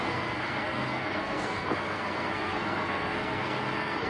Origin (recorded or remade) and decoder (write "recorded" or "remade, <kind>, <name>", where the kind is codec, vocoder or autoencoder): remade, codec, SNAC